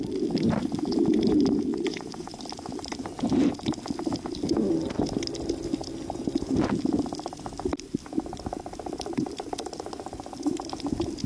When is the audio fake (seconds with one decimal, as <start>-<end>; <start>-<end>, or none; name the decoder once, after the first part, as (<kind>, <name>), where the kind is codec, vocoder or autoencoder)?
1.7-2.4 (vocoder, Vocos)